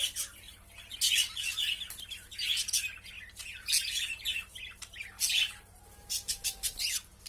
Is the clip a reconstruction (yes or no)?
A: no